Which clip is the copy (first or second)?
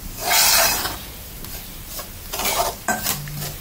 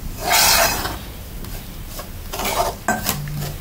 first